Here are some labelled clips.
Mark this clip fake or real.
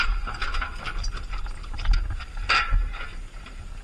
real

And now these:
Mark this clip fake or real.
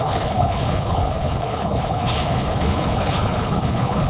fake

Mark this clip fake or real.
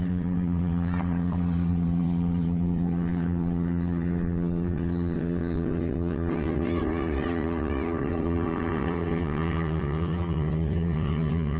fake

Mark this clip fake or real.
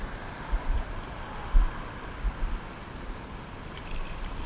real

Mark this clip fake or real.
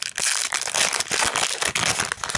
real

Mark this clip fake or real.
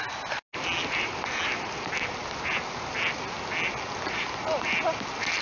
real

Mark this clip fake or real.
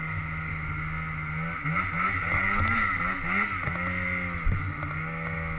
real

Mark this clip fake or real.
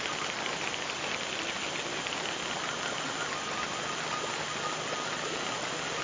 real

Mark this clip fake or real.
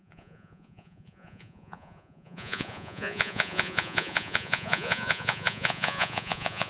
fake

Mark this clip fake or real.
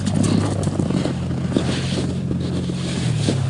real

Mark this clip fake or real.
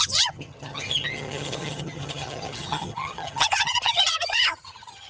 fake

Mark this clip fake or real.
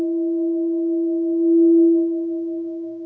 fake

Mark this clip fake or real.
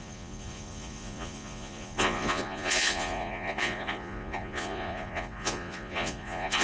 fake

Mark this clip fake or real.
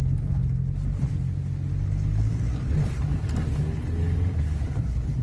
real